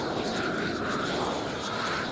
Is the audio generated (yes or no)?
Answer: no